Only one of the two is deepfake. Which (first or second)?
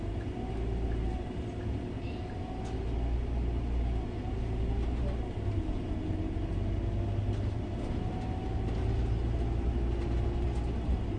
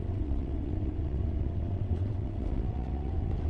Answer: second